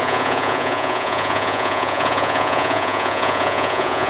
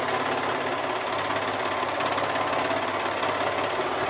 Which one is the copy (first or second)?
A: first